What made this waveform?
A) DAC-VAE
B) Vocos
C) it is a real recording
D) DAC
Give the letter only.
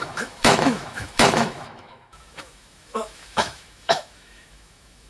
A